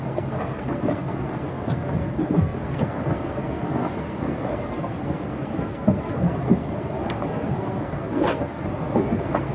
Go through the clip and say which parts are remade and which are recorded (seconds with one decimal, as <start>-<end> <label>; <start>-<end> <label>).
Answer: 0.0-9.5 remade